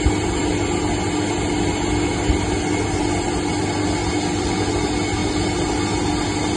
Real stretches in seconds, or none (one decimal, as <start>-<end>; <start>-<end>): 0.0-6.6